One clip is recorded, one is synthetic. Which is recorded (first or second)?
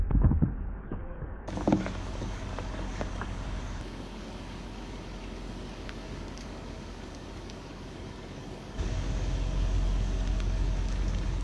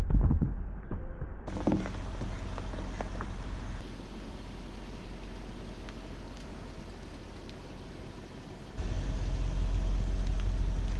second